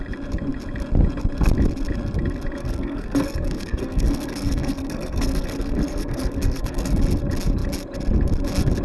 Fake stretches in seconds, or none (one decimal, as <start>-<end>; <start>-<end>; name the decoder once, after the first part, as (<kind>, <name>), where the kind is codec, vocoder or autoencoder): 2.6-7.0 (codec, SNAC)